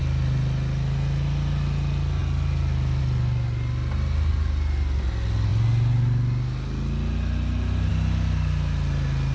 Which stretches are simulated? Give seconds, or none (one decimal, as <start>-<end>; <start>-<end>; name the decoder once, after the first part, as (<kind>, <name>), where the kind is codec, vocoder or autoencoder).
none